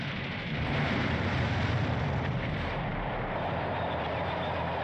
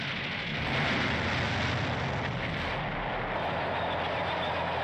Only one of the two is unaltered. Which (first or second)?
second